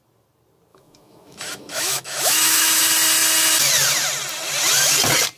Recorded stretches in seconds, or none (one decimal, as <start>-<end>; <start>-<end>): 0.0-0.7; 2.8-5.4